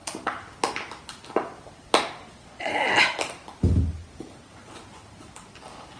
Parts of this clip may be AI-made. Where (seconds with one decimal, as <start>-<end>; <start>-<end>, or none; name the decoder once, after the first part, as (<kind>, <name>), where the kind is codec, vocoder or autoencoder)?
2.2-2.7 (vocoder, Vocos)